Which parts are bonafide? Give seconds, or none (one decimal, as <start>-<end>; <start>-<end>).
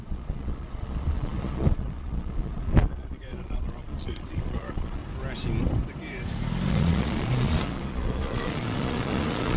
5.0-6.7